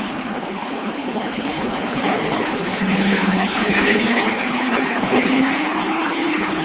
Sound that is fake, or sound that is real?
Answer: fake